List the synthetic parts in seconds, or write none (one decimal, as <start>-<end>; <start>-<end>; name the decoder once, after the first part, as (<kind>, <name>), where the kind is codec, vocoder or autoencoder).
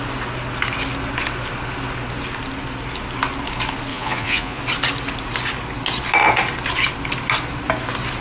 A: 3.9-4.6 (vocoder, Vocos)